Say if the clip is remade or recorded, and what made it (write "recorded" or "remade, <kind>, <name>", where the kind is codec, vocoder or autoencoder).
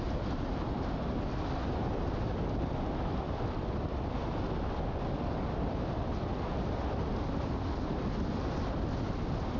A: recorded